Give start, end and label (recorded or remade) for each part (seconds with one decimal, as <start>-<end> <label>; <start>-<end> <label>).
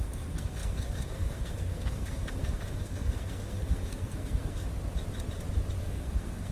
0.0-4.7 remade; 4.7-5.8 recorded; 5.8-6.5 remade